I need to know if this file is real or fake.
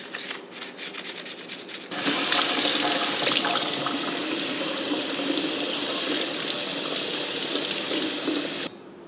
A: real